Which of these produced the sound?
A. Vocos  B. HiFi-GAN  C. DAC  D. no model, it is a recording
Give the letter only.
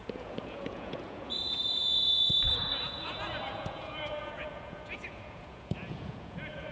A